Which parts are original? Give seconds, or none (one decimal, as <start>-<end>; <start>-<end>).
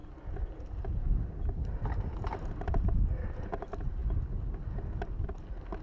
0.0-0.6; 4.0-5.8